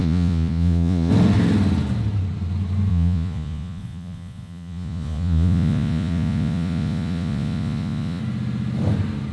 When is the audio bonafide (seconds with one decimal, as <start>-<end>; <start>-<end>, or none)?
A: 1.1-2.9; 8.2-9.3